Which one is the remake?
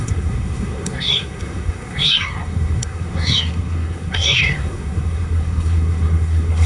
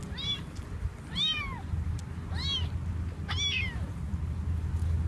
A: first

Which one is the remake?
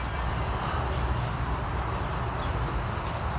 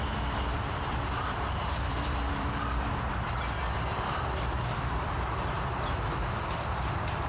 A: second